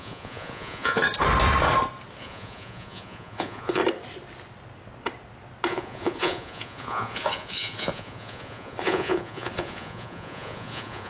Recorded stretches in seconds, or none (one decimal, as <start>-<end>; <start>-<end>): 1.0-2.2; 3.8-5.7